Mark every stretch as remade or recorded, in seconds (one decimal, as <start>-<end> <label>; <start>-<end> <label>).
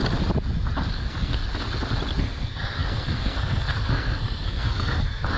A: 0.0-0.9 recorded; 0.9-1.4 remade; 1.4-2.2 recorded; 2.2-5.4 remade